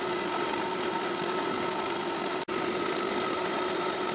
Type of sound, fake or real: real